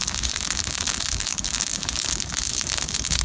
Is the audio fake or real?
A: fake